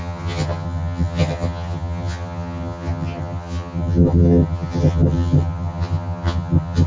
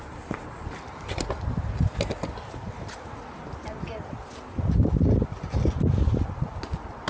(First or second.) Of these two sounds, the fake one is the first